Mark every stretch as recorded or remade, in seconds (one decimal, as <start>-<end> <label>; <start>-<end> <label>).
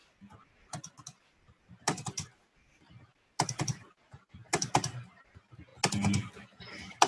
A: 0.0-1.2 recorded; 1.2-5.7 remade; 5.7-6.6 recorded; 6.6-7.1 remade